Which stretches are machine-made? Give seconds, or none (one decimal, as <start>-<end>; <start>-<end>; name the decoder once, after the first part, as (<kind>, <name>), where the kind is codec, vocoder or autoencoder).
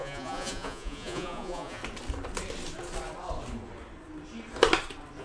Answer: 0.0-1.8 (vocoder, Vocos)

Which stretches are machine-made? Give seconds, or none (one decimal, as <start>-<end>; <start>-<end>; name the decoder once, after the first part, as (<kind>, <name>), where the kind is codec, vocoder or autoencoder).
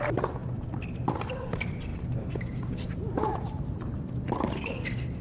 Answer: 1.9-4.7 (vocoder, BigVGAN v2)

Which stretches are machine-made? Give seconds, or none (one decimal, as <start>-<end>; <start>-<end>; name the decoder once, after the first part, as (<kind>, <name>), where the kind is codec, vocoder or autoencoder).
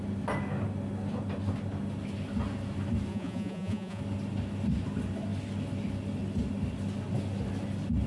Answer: 3.1-4.0 (vocoder, Vocos)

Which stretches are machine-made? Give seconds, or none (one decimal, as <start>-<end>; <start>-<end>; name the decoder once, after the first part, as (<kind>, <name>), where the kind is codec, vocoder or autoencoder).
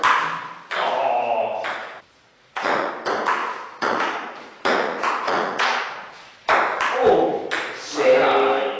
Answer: 1.8-2.9 (vocoder, Vocos); 3.4-6.3